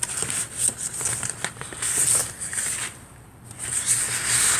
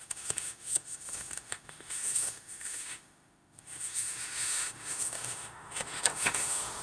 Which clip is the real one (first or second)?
first